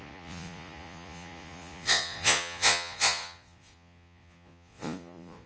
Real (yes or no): no